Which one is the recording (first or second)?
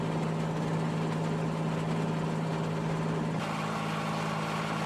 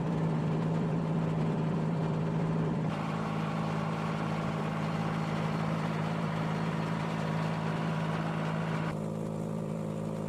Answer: first